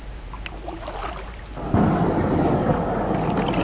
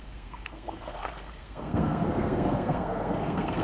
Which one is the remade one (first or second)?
second